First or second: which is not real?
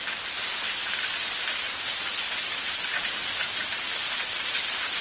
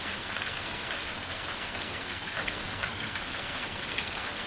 second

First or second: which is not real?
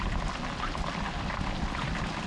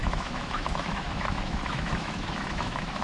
second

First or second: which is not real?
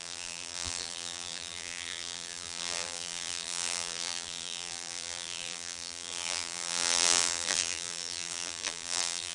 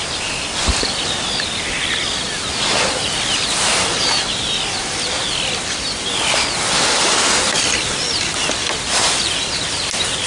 first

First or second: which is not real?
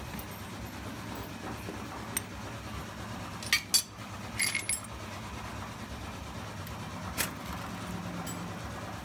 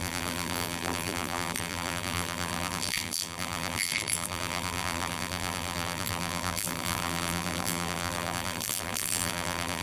second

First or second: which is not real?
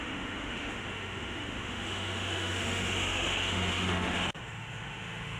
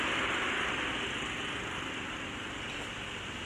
first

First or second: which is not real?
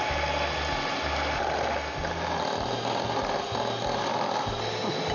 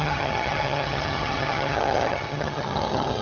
second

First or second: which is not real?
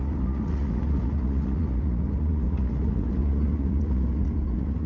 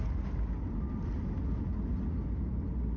first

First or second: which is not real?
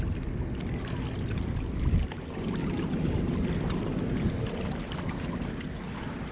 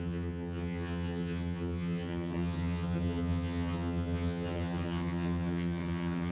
second